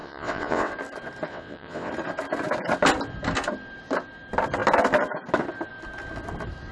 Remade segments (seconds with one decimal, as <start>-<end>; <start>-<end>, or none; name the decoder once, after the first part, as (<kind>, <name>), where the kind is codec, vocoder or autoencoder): 0.0-0.7 (vocoder, WaveNeXt); 1.3-1.9